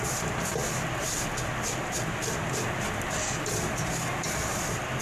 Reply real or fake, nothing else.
real